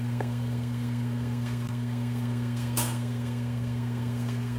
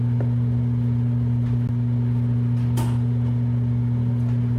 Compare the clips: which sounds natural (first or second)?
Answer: second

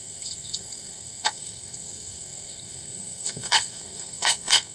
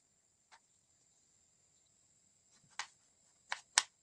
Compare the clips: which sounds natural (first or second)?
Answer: second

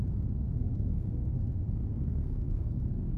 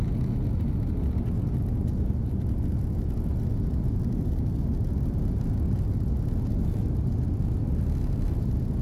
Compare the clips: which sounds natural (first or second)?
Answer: second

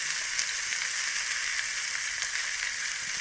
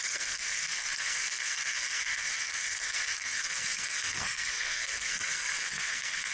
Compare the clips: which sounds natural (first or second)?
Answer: first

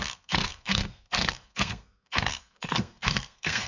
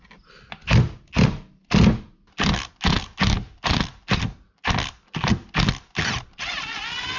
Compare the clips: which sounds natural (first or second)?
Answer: second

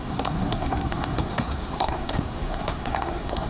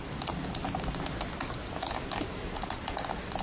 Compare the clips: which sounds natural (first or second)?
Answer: second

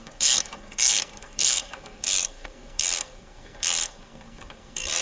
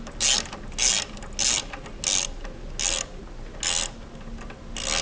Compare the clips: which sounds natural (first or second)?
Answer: second